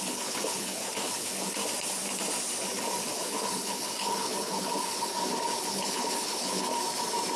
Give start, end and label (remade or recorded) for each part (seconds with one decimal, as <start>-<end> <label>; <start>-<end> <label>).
0.0-1.6 remade; 1.6-3.0 recorded; 3.0-5.1 remade; 5.1-5.7 recorded; 5.7-6.7 remade; 6.7-7.4 recorded